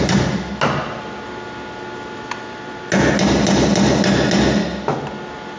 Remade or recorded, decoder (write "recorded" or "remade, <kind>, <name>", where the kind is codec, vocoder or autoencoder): recorded